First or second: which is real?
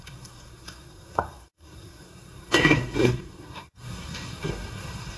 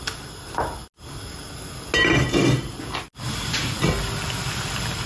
second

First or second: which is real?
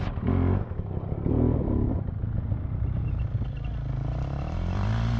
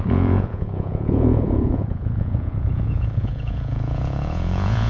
first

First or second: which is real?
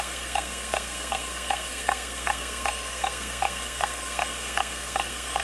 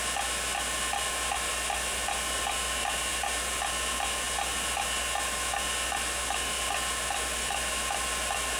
second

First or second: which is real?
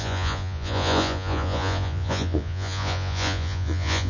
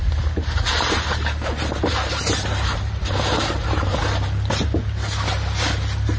second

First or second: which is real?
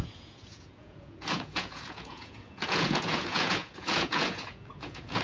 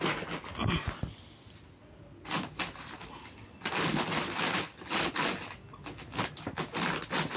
second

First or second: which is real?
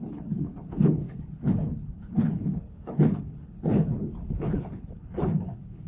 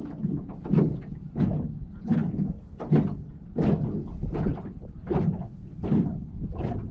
second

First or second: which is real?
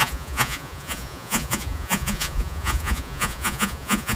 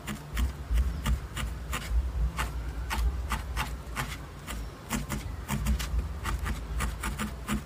second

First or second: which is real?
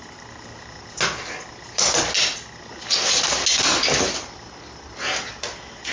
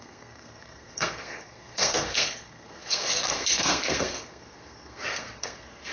first